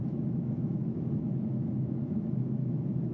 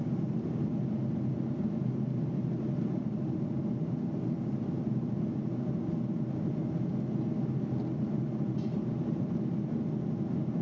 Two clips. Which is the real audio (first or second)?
second